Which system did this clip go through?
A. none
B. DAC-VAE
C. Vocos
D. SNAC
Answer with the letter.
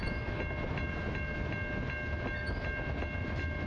A